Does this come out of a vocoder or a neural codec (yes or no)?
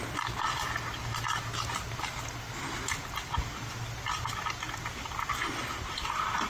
no